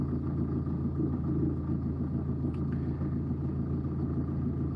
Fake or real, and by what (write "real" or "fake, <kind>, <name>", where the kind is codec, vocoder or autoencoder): real